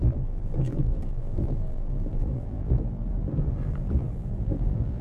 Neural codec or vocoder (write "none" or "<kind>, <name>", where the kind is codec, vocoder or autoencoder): vocoder, BigVGAN v2